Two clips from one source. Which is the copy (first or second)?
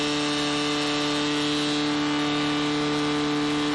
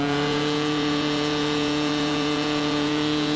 second